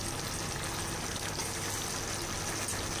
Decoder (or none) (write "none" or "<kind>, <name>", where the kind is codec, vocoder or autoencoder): none